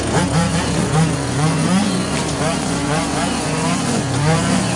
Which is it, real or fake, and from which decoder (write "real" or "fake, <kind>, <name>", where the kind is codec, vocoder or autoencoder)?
fake, vocoder, Vocos